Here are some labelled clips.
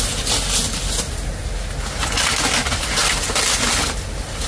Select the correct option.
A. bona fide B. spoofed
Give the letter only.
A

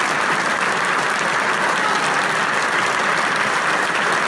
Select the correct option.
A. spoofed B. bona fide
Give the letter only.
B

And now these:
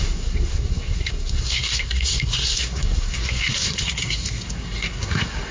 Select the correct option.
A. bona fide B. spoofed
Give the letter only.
B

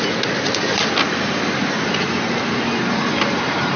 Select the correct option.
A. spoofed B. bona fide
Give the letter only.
B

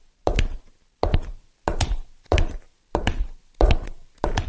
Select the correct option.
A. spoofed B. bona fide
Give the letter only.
B